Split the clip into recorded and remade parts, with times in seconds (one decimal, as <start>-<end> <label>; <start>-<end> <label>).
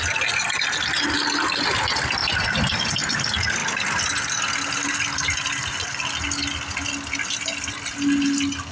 0.0-8.7 recorded